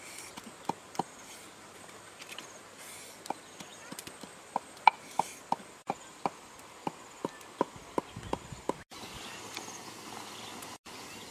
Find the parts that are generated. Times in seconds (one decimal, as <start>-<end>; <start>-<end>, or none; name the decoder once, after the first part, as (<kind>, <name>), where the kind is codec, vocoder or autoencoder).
none